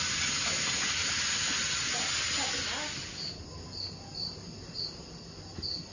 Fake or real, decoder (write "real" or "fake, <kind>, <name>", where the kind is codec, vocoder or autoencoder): real